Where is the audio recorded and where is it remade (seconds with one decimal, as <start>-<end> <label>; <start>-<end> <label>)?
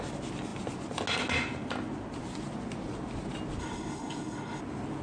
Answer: 0.0-3.6 recorded; 3.6-4.6 remade; 4.6-5.0 recorded